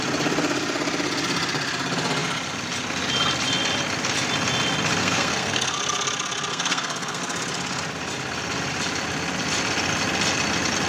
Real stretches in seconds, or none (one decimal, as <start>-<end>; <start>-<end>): 0.0-5.0; 5.8-6.5; 7.2-10.9